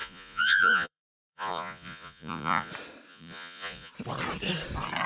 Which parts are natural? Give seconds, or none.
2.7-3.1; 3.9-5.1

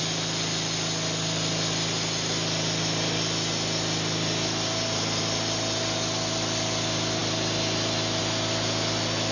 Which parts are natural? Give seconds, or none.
0.0-9.3

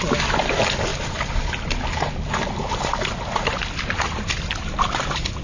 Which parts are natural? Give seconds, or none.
0.0-5.4

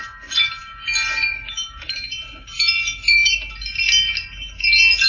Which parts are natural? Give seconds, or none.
0.0-5.1

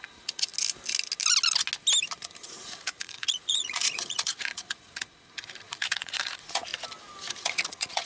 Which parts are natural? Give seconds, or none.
0.5-2.4; 6.7-7.3

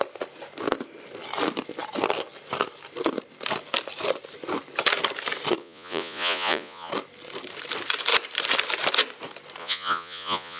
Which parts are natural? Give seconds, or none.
0.0-5.6; 6.9-9.6